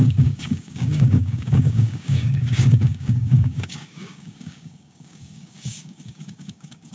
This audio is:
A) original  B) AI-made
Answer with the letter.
B